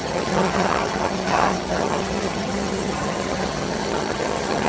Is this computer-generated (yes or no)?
yes